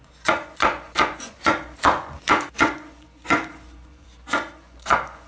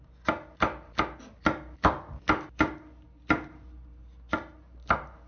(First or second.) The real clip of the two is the second